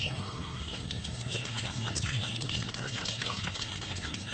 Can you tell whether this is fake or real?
fake